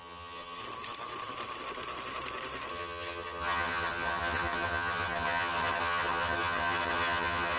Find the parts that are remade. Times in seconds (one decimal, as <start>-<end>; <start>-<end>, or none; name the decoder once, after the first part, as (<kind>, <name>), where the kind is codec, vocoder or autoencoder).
0.0-0.6 (vocoder, HiFi-GAN); 2.7-7.6